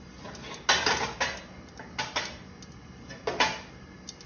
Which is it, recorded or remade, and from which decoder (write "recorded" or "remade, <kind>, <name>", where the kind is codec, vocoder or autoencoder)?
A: recorded